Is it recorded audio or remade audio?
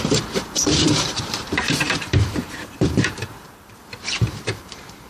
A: remade